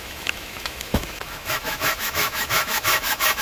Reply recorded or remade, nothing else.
remade